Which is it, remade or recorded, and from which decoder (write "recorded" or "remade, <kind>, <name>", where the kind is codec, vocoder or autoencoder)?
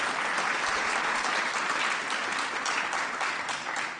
recorded